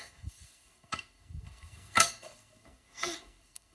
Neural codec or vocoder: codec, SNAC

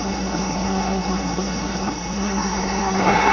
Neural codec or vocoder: codec, SNAC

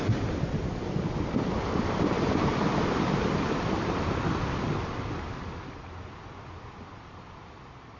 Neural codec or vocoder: none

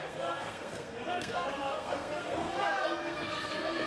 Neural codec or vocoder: codec, SNAC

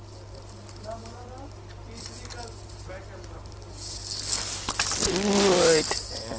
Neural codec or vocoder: none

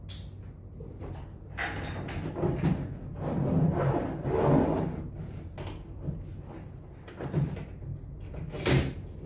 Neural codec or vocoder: none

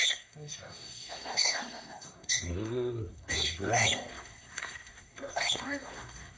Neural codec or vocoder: codec, SNAC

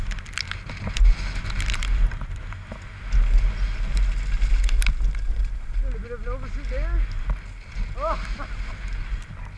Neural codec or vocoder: none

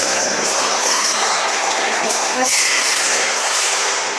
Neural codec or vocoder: codec, SNAC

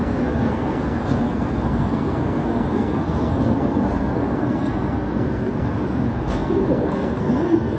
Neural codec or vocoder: codec, SNAC